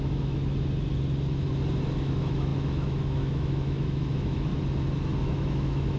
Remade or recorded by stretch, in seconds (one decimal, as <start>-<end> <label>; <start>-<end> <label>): 0.0-0.4 remade; 0.4-2.1 recorded; 2.1-4.5 remade; 4.5-5.2 recorded; 5.2-6.0 remade